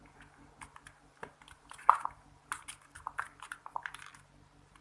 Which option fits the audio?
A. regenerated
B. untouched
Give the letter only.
A